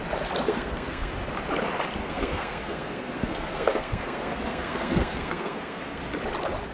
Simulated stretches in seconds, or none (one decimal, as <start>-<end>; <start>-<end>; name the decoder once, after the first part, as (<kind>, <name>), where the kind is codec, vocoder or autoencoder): 0.5-1.1 (codec, SNAC); 2.0-6.0